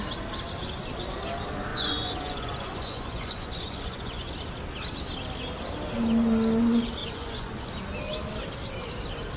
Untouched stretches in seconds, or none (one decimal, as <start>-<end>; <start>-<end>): 0.0-1.7; 4.3-7.0; 7.7-9.4